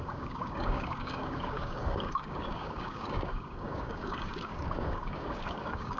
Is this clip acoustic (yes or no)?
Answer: no